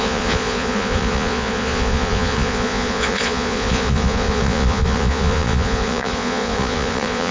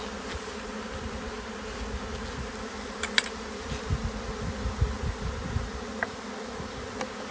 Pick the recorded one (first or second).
second